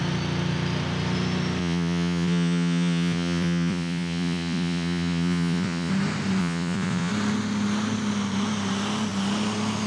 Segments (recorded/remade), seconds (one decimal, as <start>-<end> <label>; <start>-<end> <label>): 0.0-1.6 recorded; 1.6-5.9 remade; 5.9-6.4 recorded; 6.4-7.1 remade; 7.1-9.9 recorded